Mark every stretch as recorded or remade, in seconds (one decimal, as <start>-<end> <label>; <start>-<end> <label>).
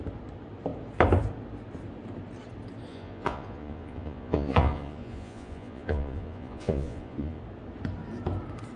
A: 0.0-2.9 recorded; 2.9-7.4 remade; 7.4-8.8 recorded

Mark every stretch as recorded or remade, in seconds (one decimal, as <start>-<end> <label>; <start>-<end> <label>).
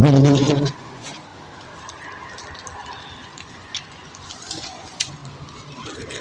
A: 0.0-1.3 remade; 1.3-3.2 recorded; 3.2-5.2 remade; 5.2-6.2 recorded